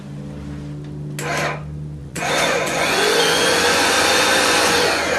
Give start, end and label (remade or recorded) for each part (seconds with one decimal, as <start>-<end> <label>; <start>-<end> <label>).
0.0-2.0 recorded; 2.0-5.2 remade